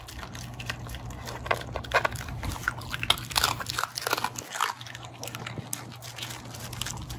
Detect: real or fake real